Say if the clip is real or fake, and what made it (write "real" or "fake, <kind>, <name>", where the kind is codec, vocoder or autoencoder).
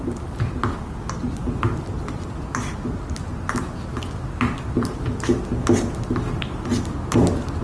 real